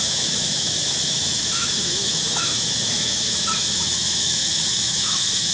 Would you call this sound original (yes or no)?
no